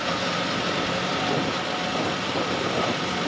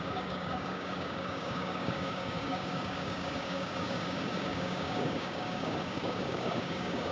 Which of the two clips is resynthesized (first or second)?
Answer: second